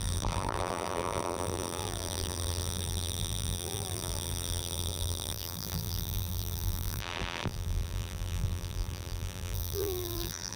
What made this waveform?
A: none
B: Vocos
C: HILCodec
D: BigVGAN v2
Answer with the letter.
D